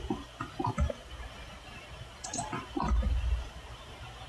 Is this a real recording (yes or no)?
yes